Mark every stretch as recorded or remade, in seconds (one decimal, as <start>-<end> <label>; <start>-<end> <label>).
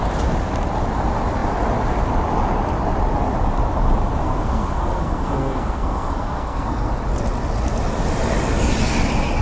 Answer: 0.0-4.2 recorded; 4.2-6.9 remade; 6.9-9.4 recorded